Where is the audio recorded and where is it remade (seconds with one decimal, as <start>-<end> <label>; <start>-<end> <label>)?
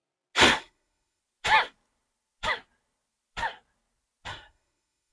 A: 0.0-0.6 recorded; 0.6-1.2 remade; 1.2-4.3 recorded; 4.3-5.1 remade